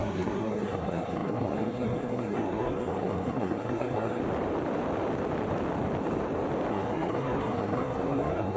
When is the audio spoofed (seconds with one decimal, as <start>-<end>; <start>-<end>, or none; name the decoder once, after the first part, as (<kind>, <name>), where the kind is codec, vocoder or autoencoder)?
0.0-4.2 (codec, SNAC); 6.7-8.6